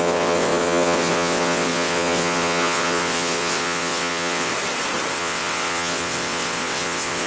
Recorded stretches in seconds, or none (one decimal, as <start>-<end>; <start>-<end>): 4.5-5.1